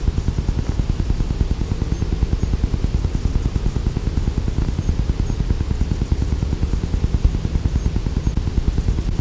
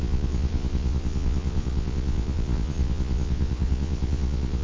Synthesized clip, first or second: second